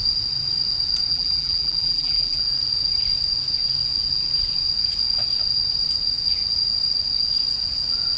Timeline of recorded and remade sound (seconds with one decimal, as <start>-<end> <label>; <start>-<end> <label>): 0.0-1.1 recorded; 1.1-2.4 remade; 2.4-8.2 recorded